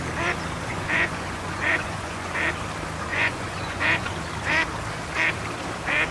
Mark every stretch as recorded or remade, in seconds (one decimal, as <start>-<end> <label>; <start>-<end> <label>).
0.0-0.7 recorded; 0.7-2.4 remade; 2.4-3.1 recorded; 3.1-4.1 remade; 4.1-6.1 recorded